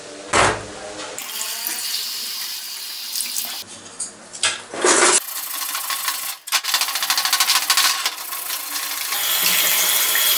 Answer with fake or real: real